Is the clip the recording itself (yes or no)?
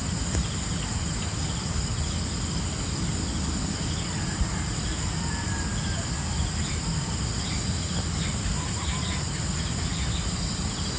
yes